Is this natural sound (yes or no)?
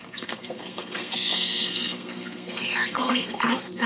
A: no